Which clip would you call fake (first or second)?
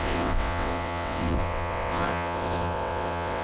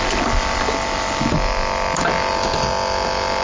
first